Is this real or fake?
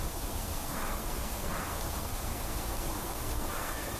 fake